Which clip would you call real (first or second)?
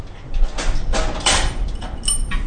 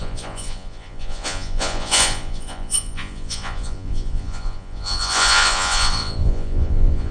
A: first